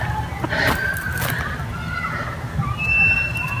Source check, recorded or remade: recorded